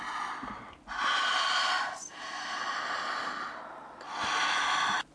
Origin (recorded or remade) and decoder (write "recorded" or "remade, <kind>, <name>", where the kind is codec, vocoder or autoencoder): recorded